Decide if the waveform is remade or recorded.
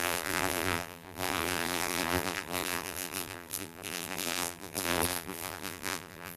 remade